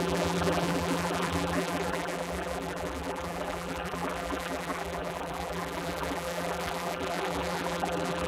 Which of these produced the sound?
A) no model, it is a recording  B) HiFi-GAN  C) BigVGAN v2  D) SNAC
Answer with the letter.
C